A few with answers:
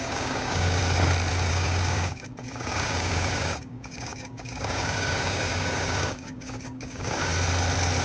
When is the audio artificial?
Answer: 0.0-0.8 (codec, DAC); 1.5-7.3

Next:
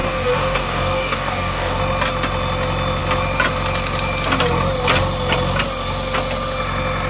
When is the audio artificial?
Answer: 0.0-1.8 (codec, DAC)

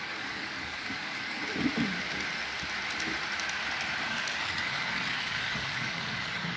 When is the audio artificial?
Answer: 0.0-1.4 (codec, DAC); 4.1-6.6

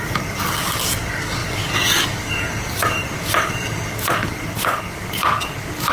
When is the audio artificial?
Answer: 0.0-5.9 (codec, DAC)

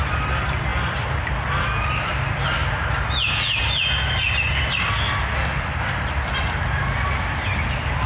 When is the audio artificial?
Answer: none

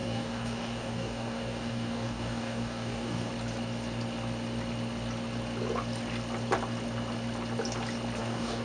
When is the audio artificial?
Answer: 0.0-3.3 (codec, DAC); 8.2-8.6

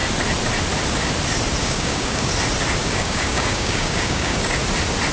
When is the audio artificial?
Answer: 1.6-2.3 (codec, DAC); 2.8-4.6

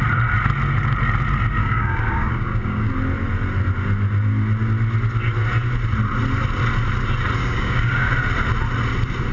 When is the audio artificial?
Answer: 1.6-2.9 (codec, DAC); 7.4-8.1